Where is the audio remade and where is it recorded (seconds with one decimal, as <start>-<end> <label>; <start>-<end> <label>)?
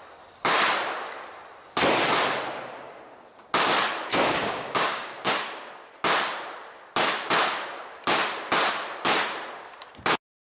0.0-4.1 recorded; 4.1-5.3 remade; 5.3-10.5 recorded